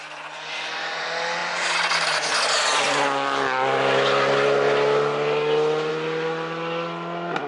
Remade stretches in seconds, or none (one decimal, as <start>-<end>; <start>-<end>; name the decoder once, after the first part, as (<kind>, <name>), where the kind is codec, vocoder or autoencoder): none